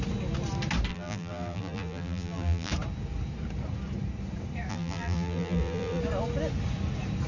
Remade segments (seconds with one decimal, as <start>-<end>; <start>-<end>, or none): 0.9-2.7; 4.7-6.0